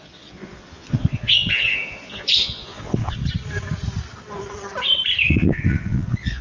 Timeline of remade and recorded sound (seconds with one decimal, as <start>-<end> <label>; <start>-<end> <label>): 0.0-3.2 remade; 3.2-5.3 recorded; 5.3-6.4 remade